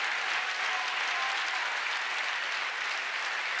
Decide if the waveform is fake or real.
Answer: real